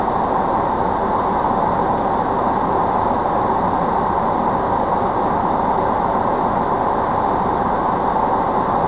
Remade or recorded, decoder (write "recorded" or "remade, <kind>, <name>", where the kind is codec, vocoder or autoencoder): recorded